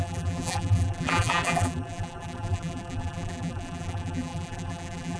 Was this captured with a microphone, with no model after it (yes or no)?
no